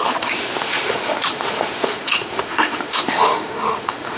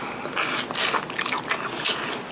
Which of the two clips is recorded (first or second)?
second